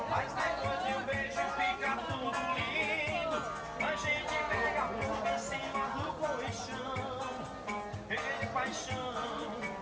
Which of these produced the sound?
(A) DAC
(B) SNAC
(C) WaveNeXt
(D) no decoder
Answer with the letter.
D